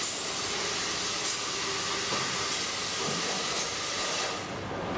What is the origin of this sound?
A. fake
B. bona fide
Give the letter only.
B